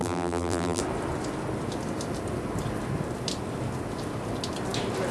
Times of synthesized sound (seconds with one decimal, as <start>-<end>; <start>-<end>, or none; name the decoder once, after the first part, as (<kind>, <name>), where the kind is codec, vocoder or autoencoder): 0.0-0.8 (vocoder, BigVGAN v2)